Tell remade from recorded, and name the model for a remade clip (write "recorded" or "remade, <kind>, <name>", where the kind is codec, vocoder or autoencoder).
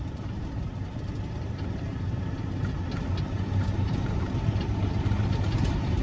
remade, vocoder, BigVGAN v2